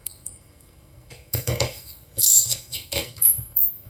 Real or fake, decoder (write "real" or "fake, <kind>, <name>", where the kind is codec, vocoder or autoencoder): fake, codec, SNAC